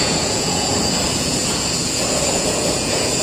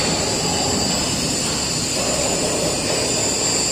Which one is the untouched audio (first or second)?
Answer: second